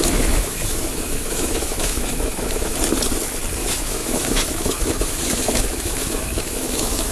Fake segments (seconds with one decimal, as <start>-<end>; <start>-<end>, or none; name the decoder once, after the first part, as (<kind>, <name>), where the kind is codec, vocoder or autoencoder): 0.0-2.7 (autoencoder, DAC-VAE); 3.6-7.1